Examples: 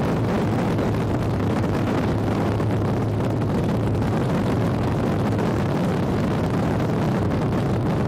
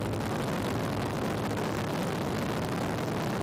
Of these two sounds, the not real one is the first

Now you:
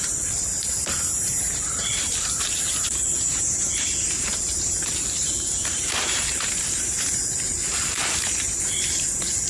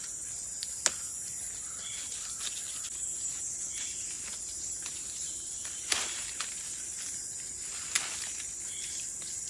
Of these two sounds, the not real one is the first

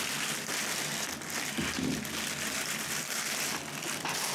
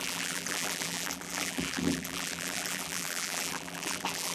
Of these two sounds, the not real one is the second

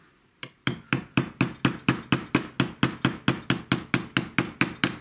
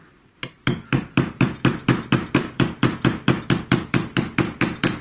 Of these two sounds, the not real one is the second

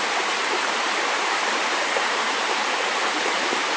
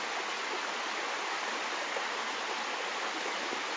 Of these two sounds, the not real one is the first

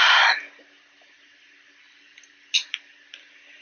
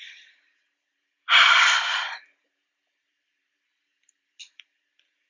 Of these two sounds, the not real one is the second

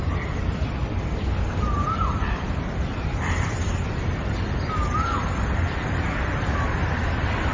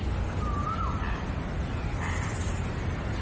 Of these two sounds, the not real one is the first